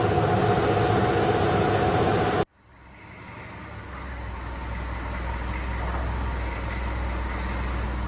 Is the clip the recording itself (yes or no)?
yes